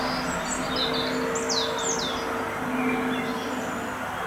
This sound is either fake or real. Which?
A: real